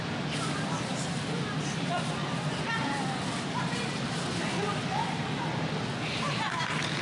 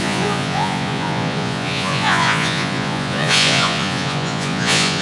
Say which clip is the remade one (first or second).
second